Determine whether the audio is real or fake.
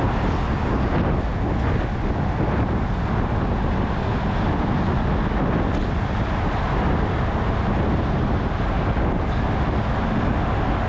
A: real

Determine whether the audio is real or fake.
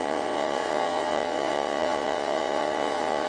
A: fake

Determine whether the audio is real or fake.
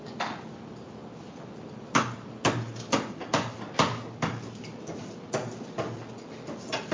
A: real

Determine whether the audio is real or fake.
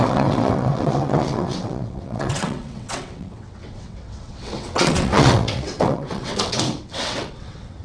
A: fake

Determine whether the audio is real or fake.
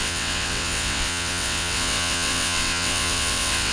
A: fake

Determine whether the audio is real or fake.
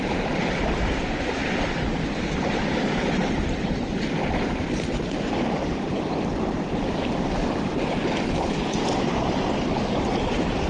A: real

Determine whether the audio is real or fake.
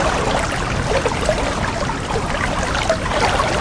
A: real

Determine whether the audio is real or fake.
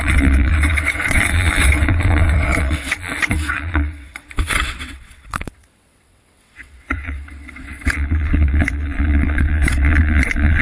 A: fake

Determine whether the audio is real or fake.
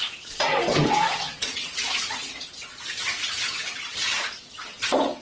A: fake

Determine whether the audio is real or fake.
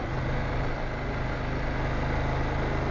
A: real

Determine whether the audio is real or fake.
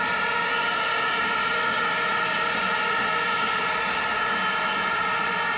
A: real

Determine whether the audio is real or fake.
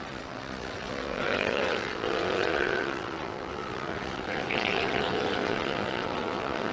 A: fake